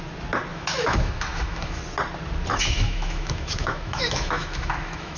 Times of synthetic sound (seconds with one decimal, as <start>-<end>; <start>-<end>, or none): 0.5-1.8; 2.5-5.2